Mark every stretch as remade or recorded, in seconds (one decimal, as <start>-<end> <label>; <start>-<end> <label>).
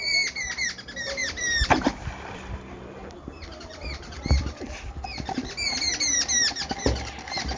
0.0-1.2 recorded; 1.2-5.8 remade; 5.8-7.6 recorded